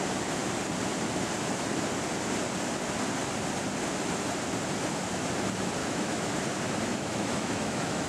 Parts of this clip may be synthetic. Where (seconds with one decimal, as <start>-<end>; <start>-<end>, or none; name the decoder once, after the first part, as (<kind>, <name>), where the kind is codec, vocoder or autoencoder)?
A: 5.8-6.3 (autoencoder, DAC-VAE); 6.9-8.1